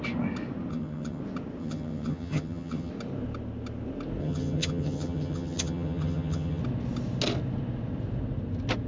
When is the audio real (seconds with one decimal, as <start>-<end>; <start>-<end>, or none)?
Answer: 0.0-0.7; 1.2-1.6; 2.9-4.2; 6.6-8.9